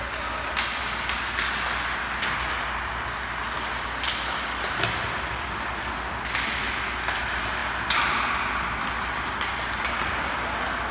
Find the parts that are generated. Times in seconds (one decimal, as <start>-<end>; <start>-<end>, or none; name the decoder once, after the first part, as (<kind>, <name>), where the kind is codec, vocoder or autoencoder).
none